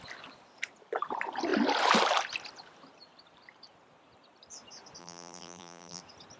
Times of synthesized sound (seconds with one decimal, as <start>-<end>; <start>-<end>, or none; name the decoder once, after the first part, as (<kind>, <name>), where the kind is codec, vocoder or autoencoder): 5.0-6.0 (vocoder, BigVGAN v2)